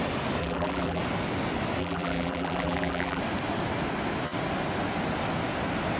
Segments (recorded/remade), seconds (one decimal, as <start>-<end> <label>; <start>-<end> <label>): 0.0-0.4 recorded; 0.4-1.0 remade; 1.0-1.8 recorded; 1.8-3.2 remade; 3.2-6.0 recorded